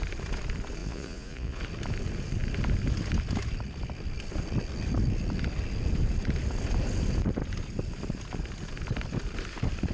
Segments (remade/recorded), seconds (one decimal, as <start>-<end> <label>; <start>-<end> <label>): 0.0-0.8 recorded; 0.8-1.6 remade; 1.6-9.9 recorded